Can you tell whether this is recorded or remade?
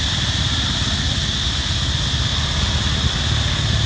recorded